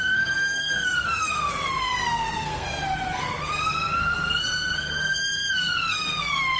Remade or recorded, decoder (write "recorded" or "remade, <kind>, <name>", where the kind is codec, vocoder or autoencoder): remade, codec, SNAC